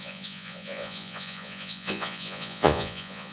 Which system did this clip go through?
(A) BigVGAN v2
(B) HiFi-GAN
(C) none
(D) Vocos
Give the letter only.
D